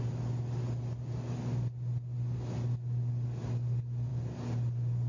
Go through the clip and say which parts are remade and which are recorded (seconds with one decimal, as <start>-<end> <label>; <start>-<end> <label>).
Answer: 0.0-5.1 recorded